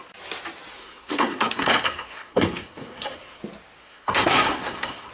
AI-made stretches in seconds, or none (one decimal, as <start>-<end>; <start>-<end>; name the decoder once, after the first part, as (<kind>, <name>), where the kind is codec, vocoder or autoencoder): 0.8-3.4 (codec, SNAC); 3.8-5.1